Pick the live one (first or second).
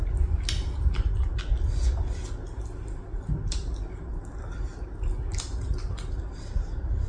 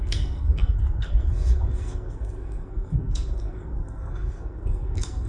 first